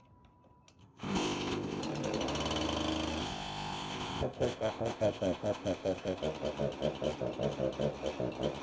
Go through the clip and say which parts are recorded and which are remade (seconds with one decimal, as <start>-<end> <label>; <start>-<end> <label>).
0.0-0.8 recorded; 0.8-1.8 remade; 1.8-3.2 recorded; 3.2-6.2 remade; 6.2-8.6 recorded